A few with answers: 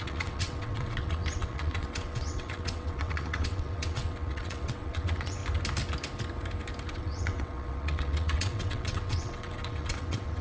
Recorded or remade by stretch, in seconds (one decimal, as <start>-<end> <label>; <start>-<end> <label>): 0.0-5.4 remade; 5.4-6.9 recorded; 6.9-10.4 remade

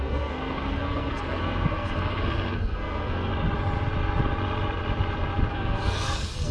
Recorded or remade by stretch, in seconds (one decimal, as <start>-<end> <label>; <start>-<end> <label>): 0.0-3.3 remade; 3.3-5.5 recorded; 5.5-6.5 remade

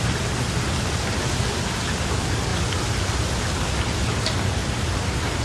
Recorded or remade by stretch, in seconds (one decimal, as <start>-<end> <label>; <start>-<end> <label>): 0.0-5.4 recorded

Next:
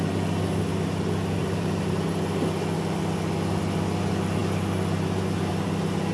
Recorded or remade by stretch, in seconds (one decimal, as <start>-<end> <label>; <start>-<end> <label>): 0.0-1.4 recorded; 1.4-2.1 remade; 2.1-6.1 recorded